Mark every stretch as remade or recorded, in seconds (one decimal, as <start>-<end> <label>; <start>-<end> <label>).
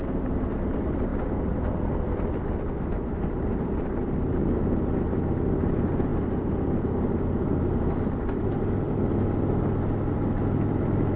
0.0-11.2 recorded